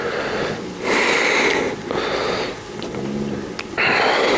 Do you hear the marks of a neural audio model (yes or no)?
no